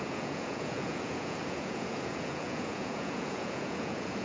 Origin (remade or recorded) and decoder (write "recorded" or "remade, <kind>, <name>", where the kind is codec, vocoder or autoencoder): remade, vocoder, Vocos